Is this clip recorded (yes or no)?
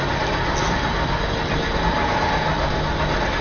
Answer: yes